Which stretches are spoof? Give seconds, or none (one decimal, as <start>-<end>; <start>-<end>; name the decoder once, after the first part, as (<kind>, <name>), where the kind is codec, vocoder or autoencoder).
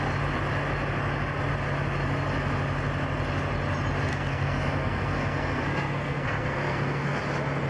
4.1-7.2 (codec, SNAC)